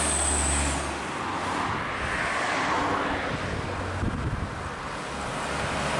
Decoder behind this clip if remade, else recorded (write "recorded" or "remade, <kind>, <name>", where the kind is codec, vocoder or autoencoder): recorded